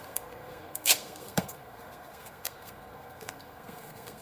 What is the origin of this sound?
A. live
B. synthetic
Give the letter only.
B